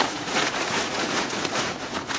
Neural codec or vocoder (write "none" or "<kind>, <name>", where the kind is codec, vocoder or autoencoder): vocoder, Vocos